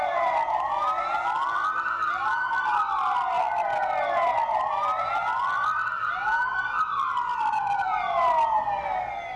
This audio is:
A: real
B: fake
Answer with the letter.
A